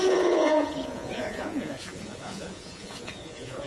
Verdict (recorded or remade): remade